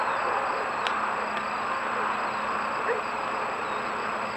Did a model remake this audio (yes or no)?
no